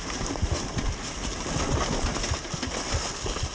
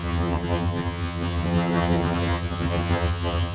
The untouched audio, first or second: first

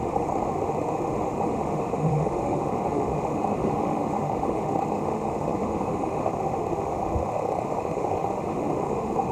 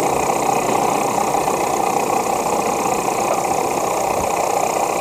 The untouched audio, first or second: second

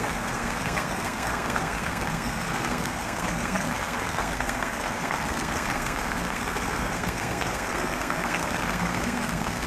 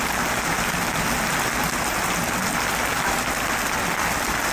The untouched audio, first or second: second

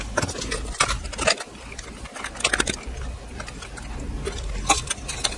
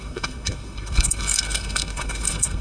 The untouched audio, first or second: first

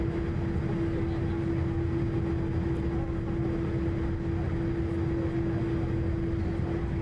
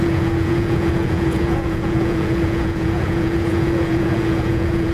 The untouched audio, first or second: first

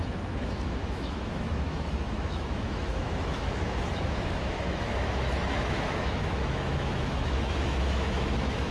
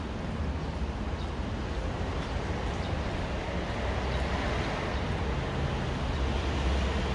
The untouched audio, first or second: second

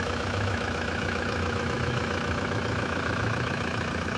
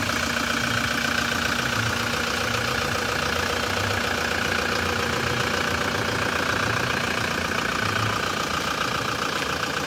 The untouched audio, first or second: second